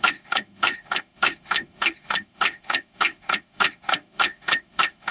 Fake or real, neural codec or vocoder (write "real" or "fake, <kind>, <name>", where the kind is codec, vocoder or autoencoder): fake, autoencoder, DAC-VAE